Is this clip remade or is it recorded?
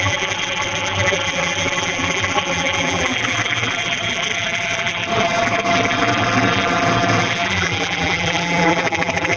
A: remade